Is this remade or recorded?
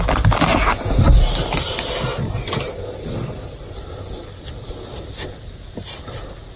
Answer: recorded